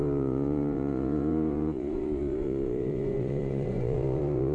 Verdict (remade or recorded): remade